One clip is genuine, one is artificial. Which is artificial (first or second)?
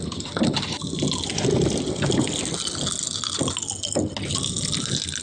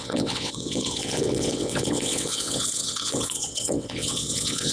second